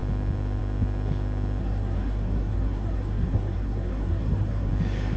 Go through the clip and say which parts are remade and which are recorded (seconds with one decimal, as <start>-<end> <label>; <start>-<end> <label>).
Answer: 0.0-1.6 recorded; 1.6-4.7 remade; 4.7-5.2 recorded

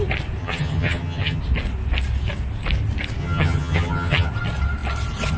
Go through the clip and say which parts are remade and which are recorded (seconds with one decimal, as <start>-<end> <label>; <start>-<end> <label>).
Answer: 0.0-0.4 recorded; 0.4-1.4 remade; 1.4-3.2 recorded; 3.2-4.3 remade; 4.3-5.4 recorded

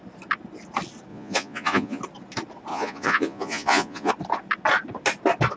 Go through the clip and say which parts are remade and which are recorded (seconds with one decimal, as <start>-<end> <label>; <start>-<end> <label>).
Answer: 0.0-1.1 recorded; 1.1-2.0 remade; 2.0-2.7 recorded; 2.7-4.1 remade; 4.1-5.6 recorded

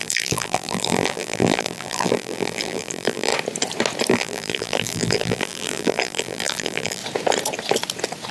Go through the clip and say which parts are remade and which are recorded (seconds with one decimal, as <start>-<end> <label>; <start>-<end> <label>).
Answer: 0.0-3.3 remade; 3.3-4.1 recorded; 4.1-7.0 remade; 7.0-8.3 recorded

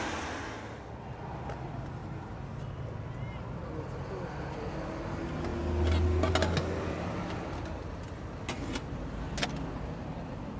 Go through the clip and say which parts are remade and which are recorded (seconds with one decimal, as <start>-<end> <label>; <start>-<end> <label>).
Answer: 0.0-10.6 recorded